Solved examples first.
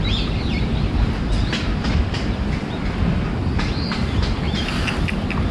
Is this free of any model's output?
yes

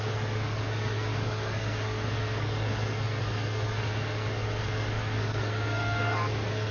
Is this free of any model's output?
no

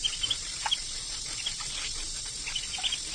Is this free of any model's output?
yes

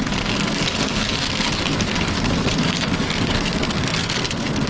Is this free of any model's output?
no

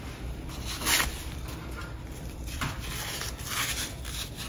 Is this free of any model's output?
yes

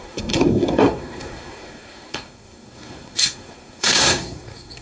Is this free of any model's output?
no